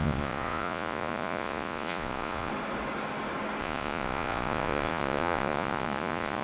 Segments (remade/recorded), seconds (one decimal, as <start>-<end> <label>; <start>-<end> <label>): 0.0-2.5 remade; 2.5-3.6 recorded; 3.6-6.4 remade